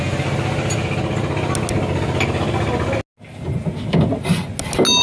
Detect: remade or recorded recorded